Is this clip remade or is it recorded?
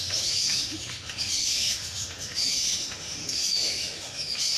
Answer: remade